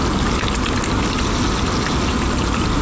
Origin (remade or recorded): recorded